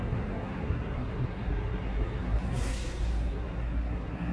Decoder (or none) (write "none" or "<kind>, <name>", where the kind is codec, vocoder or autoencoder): codec, SNAC